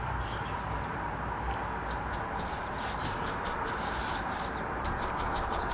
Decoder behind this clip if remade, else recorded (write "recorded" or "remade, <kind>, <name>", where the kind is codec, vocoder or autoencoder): remade, vocoder, BigVGAN v2